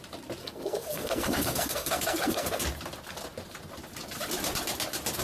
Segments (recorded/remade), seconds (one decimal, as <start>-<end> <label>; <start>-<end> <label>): 0.0-0.4 recorded; 0.4-2.6 remade; 2.6-5.2 recorded